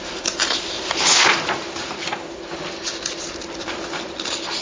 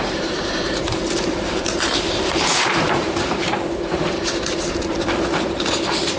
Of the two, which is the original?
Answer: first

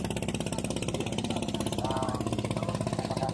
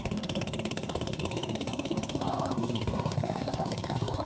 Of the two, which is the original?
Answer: first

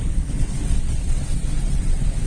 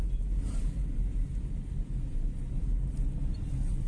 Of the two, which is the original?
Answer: second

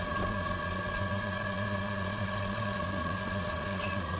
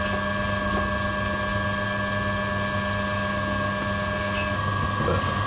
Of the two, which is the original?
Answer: second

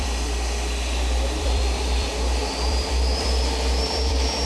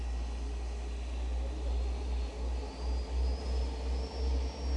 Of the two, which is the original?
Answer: second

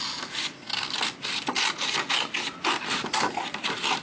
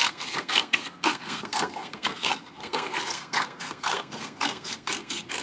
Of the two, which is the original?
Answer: first